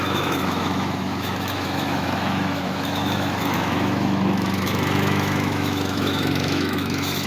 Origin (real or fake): fake